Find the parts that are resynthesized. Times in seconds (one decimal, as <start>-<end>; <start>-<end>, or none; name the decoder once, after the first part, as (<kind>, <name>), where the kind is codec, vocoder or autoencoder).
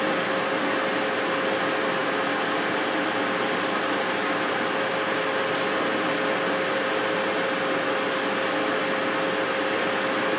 none